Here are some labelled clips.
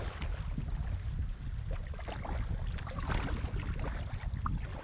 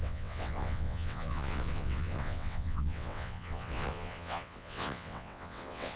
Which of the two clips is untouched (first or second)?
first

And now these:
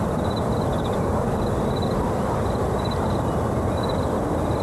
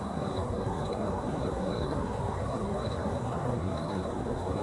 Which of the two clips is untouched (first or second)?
first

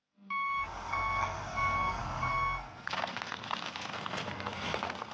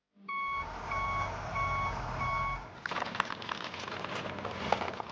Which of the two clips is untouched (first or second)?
second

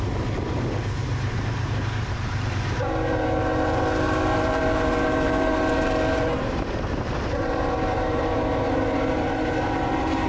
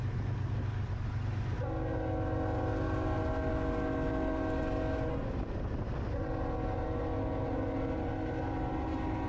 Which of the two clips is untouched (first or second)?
second